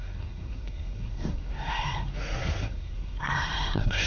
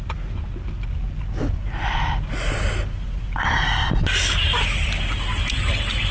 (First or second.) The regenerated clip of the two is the first